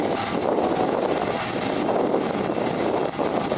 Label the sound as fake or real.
real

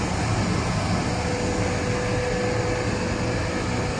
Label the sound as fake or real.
real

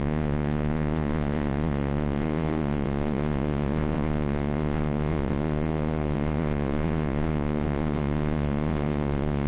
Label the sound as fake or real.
fake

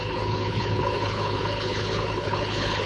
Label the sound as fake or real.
fake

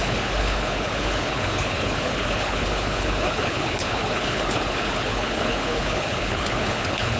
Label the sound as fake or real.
fake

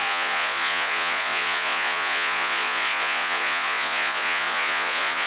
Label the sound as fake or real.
fake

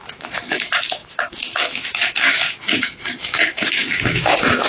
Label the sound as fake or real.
fake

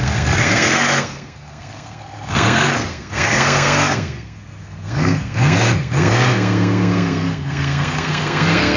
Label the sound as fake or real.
fake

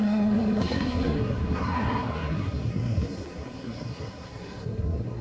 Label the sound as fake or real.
fake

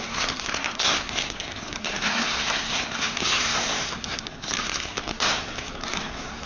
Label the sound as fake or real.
fake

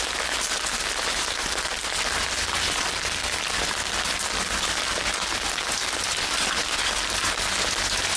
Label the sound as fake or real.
real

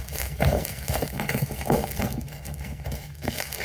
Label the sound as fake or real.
fake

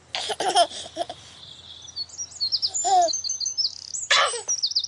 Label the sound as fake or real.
real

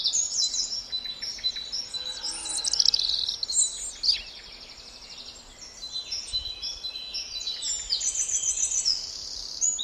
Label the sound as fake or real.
real